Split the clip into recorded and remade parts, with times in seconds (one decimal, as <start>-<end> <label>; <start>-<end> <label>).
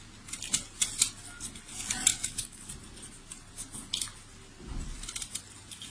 0.0-2.1 recorded; 2.1-2.7 remade; 2.7-5.9 recorded